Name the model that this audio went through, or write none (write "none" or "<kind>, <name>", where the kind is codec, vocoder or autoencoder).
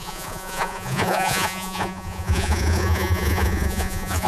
vocoder, Vocos